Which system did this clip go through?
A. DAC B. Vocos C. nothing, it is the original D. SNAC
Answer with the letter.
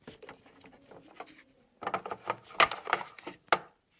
C